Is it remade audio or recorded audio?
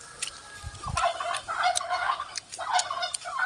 remade